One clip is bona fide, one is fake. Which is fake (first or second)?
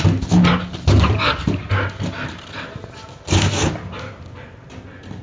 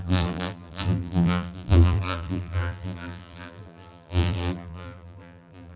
second